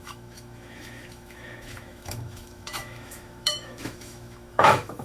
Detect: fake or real fake